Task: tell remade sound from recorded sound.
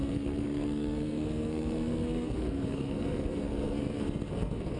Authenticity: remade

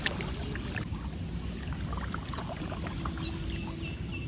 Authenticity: recorded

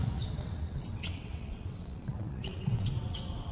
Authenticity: remade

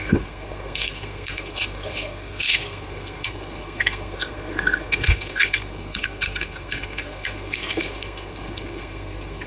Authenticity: remade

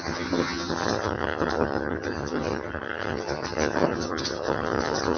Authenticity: remade